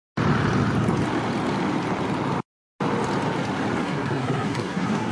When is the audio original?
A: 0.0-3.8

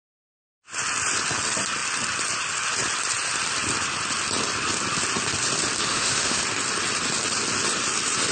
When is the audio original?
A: 0.0-5.9; 6.4-8.3

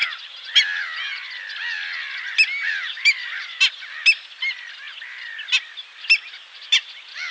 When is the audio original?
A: 0.0-7.3

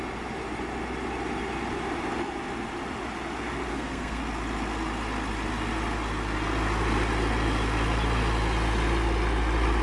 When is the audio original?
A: 0.0-3.7; 4.2-9.8